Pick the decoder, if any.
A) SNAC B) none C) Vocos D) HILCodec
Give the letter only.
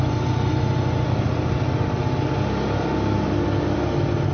B